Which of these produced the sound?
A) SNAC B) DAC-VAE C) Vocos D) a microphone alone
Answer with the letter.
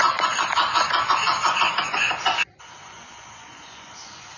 C